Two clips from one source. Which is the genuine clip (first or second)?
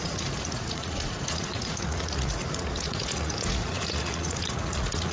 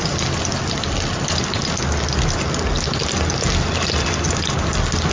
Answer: second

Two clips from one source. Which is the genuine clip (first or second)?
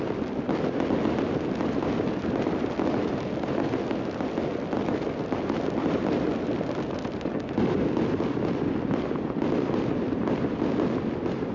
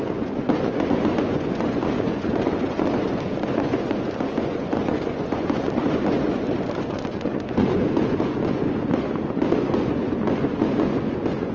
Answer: first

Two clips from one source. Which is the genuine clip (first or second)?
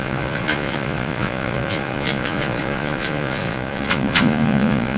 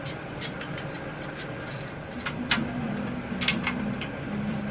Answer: second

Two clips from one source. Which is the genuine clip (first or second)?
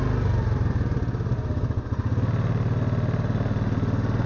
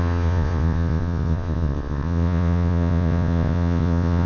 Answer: first